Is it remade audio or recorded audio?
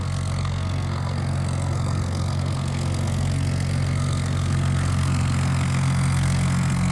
remade